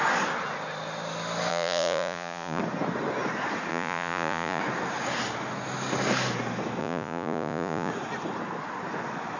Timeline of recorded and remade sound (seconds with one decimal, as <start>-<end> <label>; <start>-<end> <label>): 0.0-1.5 recorded; 1.5-2.6 remade; 2.6-3.7 recorded; 3.7-4.6 remade; 4.6-6.8 recorded; 6.8-7.9 remade; 7.9-9.4 recorded